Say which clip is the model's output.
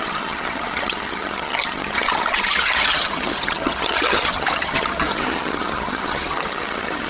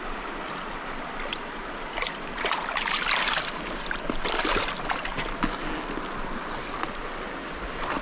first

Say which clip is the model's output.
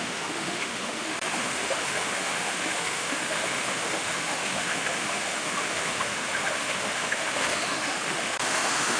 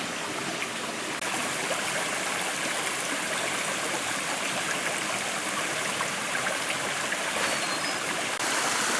first